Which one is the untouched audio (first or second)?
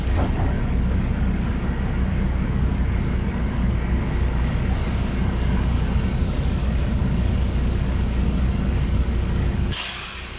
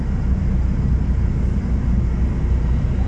second